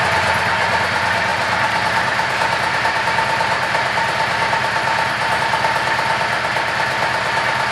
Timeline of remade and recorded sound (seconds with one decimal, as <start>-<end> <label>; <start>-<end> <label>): 0.0-7.7 recorded